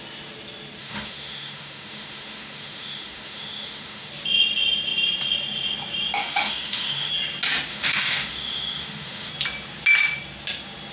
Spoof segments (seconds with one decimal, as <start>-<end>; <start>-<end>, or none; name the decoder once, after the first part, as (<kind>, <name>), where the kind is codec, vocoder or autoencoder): 0.8-4.1 (autoencoder, DAC-VAE); 6.2-7.1; 7.7-9.3